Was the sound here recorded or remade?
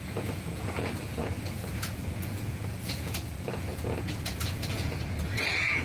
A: remade